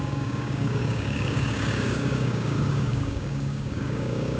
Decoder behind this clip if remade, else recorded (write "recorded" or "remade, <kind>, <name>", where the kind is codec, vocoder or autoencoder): remade, codec, DAC